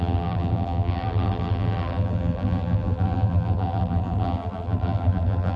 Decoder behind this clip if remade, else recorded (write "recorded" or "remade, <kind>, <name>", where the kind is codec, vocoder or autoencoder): remade, vocoder, BigVGAN v2